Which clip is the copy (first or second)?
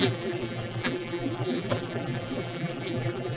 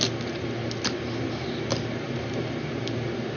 first